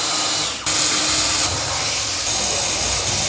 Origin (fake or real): real